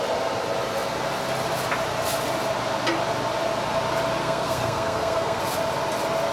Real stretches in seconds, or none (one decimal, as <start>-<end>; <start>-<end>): 0.0-4.2; 5.4-6.3